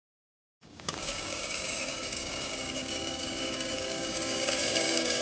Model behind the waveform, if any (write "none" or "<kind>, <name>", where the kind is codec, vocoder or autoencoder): codec, DAC